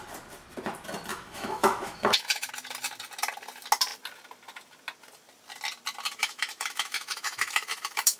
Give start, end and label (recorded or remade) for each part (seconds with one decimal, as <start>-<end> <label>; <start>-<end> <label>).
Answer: 0.0-1.1 recorded; 1.1-2.5 remade; 2.5-6.2 recorded; 6.2-8.2 remade